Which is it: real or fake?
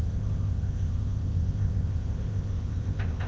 fake